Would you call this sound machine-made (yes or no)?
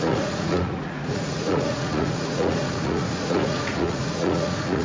yes